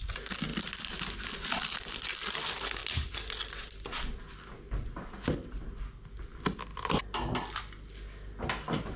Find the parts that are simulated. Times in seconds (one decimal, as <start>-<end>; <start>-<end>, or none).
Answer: none